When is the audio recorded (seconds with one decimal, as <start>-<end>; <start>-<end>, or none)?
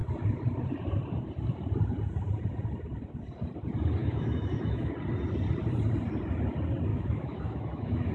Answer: 0.0-4.0; 4.9-6.9